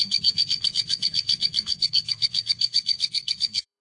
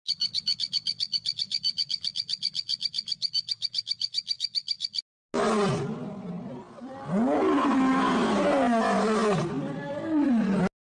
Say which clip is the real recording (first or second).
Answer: second